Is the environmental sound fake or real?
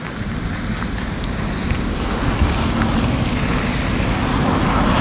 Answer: real